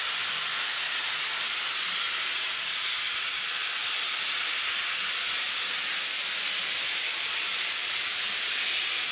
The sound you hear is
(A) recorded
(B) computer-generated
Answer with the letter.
A